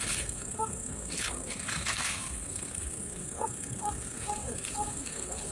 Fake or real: fake